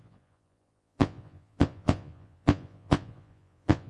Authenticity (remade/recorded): remade